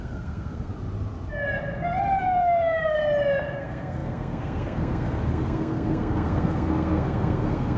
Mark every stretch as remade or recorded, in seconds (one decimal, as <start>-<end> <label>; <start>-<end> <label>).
0.0-0.7 remade; 0.7-2.2 recorded; 2.2-3.0 remade; 3.0-3.6 recorded; 3.6-7.8 remade